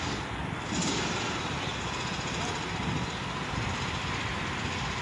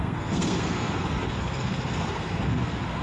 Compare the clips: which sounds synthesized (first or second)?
second